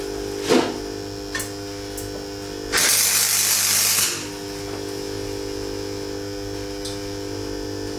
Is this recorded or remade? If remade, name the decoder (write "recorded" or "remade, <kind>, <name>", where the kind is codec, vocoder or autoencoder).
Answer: recorded